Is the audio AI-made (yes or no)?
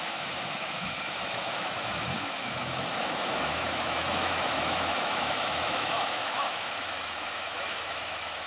yes